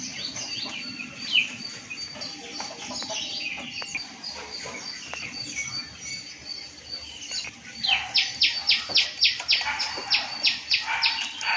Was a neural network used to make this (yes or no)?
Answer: no